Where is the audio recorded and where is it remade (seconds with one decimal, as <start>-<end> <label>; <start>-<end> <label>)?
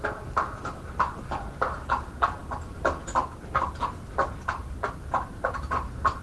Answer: 0.0-6.2 recorded